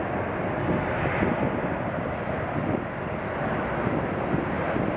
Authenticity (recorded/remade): recorded